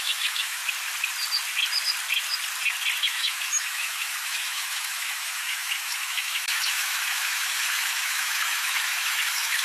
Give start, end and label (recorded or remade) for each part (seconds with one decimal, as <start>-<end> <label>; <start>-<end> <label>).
0.0-0.6 remade; 0.6-3.0 recorded; 3.0-9.6 remade